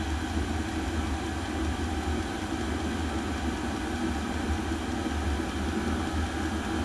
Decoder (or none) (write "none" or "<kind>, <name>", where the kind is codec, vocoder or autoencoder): none